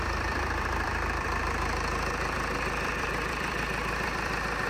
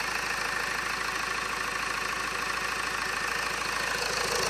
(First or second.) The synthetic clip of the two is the first